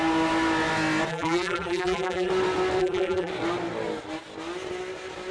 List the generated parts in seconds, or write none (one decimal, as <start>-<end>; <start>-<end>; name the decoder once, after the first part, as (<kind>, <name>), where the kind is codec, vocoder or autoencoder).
1.1-2.3 (vocoder, BigVGAN v2); 2.8-3.3